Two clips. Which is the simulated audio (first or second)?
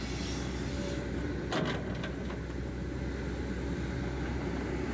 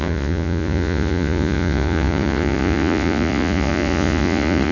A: second